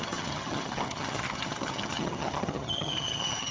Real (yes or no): no